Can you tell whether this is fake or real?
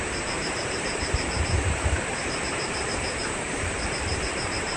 fake